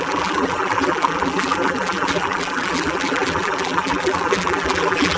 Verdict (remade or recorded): remade